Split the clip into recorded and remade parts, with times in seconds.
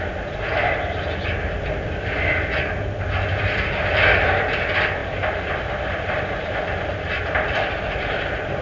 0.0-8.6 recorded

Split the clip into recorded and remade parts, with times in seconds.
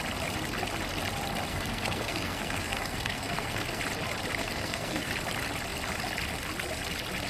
0.0-1.5 recorded; 1.5-3.8 remade; 3.8-4.4 recorded; 4.4-5.1 remade; 5.1-7.3 recorded